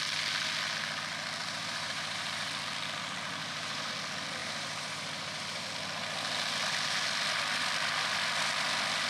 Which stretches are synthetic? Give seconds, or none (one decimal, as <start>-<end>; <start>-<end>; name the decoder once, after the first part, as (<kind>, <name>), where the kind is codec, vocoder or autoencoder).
1.4-2.5 (vocoder, BigVGAN v2); 3.4-3.9; 4.4-5.7